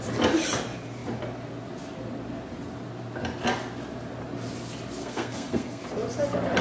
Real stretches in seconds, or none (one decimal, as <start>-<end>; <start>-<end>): 0.0-5.0; 5.8-6.6